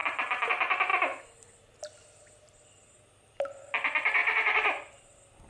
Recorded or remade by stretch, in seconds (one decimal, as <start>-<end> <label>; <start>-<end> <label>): 0.0-0.5 remade; 0.5-4.2 recorded; 4.2-4.7 remade; 4.7-5.5 recorded